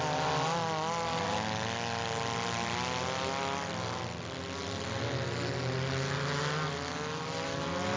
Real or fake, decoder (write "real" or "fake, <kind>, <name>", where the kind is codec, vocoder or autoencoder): real